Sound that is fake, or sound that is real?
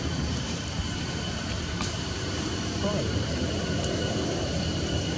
fake